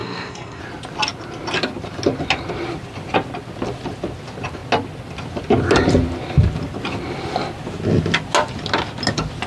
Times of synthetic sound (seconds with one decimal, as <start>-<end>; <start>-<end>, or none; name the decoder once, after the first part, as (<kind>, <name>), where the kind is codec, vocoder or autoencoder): 0.0-0.6 (codec, SNAC)